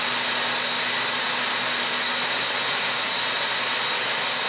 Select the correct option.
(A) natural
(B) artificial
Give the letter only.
A